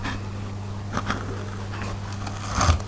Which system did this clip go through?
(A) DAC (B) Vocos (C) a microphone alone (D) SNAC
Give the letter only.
C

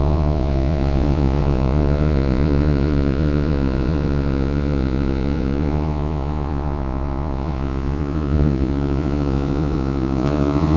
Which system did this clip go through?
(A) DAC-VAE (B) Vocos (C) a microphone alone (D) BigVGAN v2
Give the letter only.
B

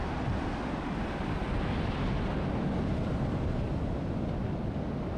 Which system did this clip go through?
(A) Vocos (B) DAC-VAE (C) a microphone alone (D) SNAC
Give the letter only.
C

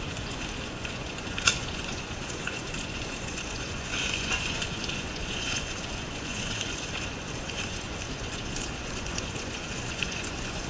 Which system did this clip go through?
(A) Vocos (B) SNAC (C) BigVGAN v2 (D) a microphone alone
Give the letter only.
A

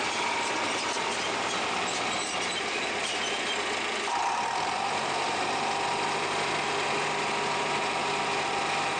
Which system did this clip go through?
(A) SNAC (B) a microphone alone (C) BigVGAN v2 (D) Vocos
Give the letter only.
B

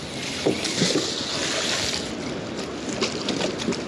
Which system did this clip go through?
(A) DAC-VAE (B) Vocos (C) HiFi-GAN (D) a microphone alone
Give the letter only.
D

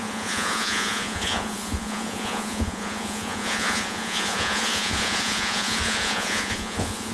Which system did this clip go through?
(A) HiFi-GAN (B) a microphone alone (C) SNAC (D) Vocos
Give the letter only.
D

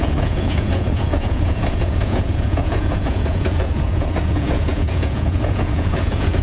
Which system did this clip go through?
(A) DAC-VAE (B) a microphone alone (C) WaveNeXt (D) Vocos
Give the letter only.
D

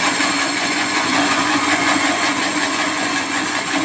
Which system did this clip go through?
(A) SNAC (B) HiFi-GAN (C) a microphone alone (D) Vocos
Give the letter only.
D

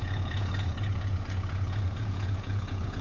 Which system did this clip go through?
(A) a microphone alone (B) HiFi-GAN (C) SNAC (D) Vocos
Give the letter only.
D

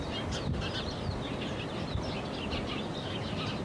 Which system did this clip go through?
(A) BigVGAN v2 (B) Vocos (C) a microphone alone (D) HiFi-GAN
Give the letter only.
C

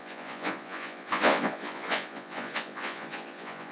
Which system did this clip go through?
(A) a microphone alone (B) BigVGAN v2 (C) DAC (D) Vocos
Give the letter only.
D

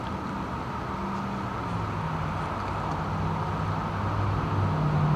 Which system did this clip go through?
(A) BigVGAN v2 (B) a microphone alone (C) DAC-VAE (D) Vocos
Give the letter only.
B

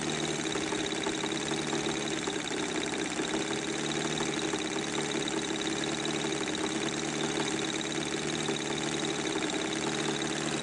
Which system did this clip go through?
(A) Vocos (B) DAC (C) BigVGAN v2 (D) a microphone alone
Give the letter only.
D